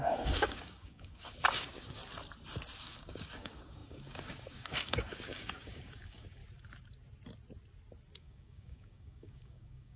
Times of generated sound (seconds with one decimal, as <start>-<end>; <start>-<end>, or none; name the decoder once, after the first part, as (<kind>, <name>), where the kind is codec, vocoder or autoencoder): 0.0-2.0 (codec, DAC); 2.8-6.4; 8.2-10.0